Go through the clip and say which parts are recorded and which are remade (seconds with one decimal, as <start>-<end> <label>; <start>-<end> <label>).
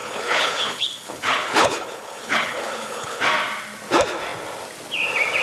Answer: 0.0-3.2 remade; 3.2-5.4 recorded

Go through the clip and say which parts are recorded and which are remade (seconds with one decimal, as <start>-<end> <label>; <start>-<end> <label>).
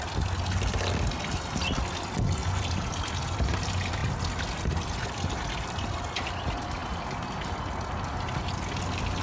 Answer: 0.0-9.2 recorded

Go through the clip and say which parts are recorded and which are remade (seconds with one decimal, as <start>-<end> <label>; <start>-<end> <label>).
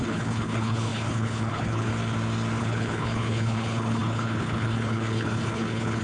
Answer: 0.0-1.9 remade; 1.9-2.6 recorded; 2.6-6.0 remade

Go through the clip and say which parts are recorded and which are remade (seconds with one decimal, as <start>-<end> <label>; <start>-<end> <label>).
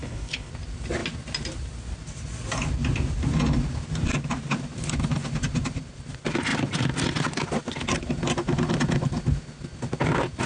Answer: 0.0-0.5 remade; 0.5-10.5 recorded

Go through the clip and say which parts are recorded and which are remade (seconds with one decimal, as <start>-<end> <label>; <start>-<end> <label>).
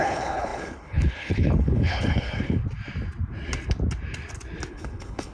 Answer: 0.0-2.6 remade; 2.6-4.7 recorded; 4.7-5.3 remade